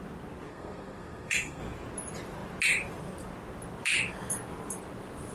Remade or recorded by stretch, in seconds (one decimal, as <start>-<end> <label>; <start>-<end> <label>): 0.0-0.5 recorded; 0.5-1.6 remade; 1.6-5.3 recorded